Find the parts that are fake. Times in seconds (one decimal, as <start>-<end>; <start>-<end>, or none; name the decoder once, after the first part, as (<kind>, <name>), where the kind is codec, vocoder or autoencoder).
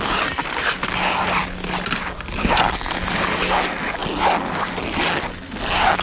none